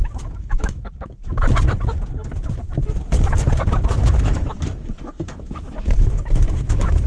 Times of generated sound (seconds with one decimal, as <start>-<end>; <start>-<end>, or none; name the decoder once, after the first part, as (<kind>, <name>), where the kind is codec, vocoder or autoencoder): 0.0-1.2 (autoencoder, DAC-VAE); 3.9-7.1